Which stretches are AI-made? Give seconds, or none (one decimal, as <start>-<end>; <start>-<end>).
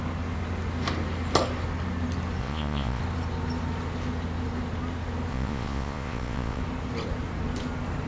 2.4-3.0; 5.3-6.6